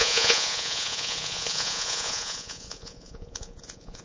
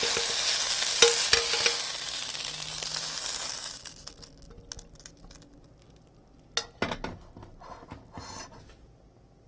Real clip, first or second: second